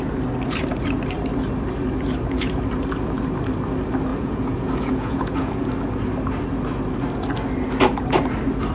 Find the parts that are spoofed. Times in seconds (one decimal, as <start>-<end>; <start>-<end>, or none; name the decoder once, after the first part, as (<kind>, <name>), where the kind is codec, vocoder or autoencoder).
4.1-5.7 (vocoder, Vocos)

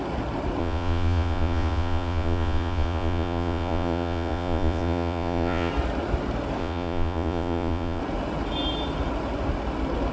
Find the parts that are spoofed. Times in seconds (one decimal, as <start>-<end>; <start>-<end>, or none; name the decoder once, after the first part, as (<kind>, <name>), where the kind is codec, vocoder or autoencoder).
0.6-5.7 (vocoder, Vocos); 6.6-8.0